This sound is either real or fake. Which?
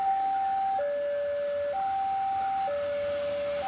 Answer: real